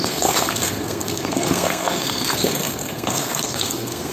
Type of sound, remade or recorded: remade